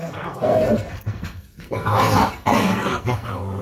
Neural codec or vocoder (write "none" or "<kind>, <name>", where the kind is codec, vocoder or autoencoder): codec, SNAC